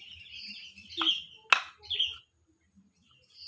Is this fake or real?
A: real